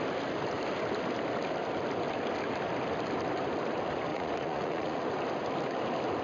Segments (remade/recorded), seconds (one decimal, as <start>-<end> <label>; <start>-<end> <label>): 0.0-4.1 recorded; 4.1-5.0 remade; 5.0-6.2 recorded